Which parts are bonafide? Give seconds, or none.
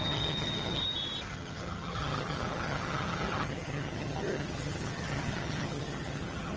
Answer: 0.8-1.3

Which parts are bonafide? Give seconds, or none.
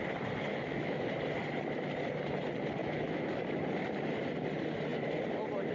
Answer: 0.0-0.5; 1.1-2.8; 3.4-5.7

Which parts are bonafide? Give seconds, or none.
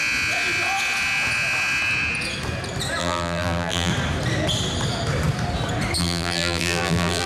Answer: 0.0-3.0; 3.9-6.0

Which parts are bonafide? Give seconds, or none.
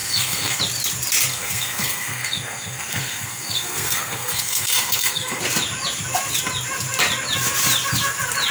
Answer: 0.6-1.3; 5.4-8.5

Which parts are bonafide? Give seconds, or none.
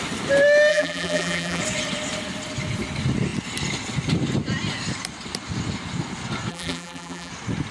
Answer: 0.0-0.7; 1.6-6.5; 7.3-7.7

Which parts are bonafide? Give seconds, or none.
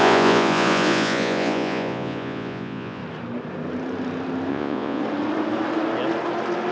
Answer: 3.0-4.5; 5.0-6.7